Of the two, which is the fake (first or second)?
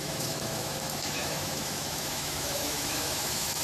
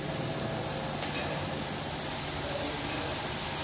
first